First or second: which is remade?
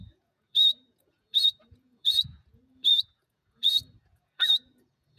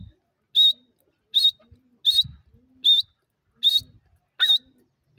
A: first